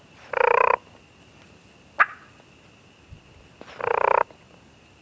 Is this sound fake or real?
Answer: real